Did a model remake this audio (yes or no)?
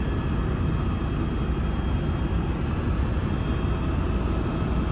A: no